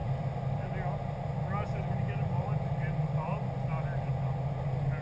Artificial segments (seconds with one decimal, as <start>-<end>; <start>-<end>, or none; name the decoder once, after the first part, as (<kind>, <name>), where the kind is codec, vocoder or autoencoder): none